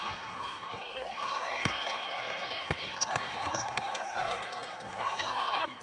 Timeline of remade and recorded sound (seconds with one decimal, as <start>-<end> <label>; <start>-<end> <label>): 0.0-5.8 remade